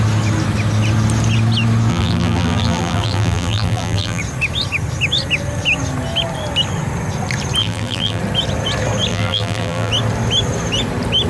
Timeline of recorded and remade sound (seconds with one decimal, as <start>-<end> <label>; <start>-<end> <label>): 0.0-1.9 recorded; 1.9-4.2 remade; 4.2-7.6 recorded; 7.6-8.2 remade; 8.2-9.1 recorded; 9.1-9.9 remade; 9.9-11.3 recorded